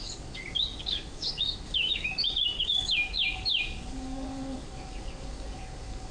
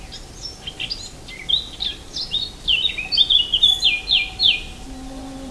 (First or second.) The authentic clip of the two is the second